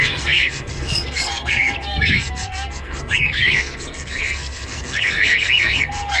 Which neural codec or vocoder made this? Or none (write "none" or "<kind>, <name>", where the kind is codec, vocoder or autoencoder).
codec, SNAC